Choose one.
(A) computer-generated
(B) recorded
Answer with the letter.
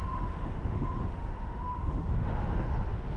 A